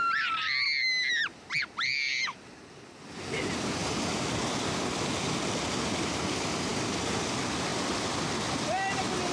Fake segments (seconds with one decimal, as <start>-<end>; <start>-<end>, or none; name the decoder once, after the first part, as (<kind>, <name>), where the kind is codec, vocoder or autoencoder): none

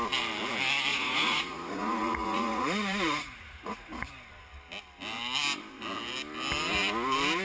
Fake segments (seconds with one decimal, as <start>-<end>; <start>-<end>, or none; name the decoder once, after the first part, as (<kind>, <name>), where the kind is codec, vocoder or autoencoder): 0.9-4.1 (vocoder, Vocos)

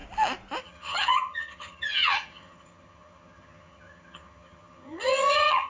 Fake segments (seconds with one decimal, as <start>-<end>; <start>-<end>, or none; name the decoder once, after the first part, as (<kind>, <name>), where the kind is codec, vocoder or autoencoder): 0.6-5.7 (vocoder, HiFi-GAN)

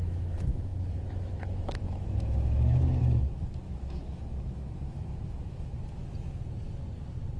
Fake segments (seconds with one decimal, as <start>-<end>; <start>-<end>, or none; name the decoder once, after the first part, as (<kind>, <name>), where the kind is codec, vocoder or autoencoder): 0.0-6.0 (autoencoder, DAC-VAE)

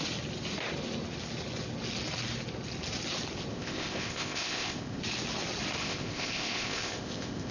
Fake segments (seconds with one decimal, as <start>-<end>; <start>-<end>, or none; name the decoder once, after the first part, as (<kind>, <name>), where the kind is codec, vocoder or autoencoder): 3.5-5.0 (codec, ZipCodec); 5.8-7.5

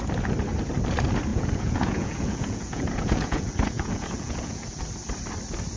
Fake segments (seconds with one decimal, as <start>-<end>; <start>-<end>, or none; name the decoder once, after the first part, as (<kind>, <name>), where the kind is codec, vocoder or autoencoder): 1.3-4.8 (vocoder, Vocos)

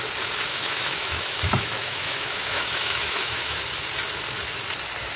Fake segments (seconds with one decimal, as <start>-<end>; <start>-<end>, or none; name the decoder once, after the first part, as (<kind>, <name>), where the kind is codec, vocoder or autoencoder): 0.5-3.6 (autoencoder, DAC-VAE)